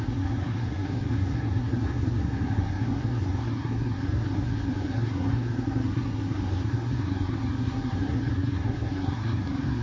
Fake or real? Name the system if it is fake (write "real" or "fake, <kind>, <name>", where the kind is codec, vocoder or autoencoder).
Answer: fake, codec, SNAC